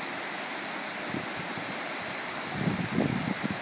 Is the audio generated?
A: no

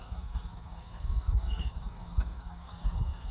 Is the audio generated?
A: yes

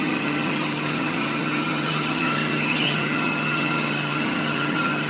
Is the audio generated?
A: yes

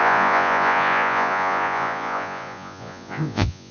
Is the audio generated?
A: yes